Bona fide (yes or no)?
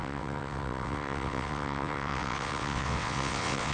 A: no